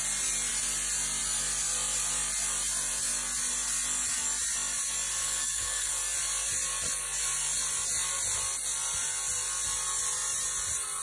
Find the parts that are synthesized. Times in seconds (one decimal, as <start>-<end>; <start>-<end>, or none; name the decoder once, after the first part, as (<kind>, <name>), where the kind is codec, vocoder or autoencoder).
5.2-5.9 (codec, DAC)